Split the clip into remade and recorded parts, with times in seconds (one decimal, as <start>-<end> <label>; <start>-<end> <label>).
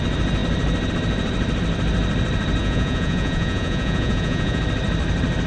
0.0-2.6 recorded; 2.6-4.6 remade; 4.6-5.5 recorded